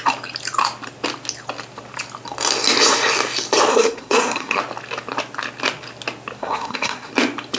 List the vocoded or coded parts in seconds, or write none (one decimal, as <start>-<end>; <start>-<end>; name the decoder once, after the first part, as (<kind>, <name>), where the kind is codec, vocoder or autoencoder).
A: 3.7-4.6 (codec, SNAC); 6.4-7.1